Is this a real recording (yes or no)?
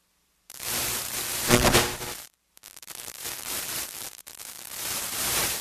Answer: no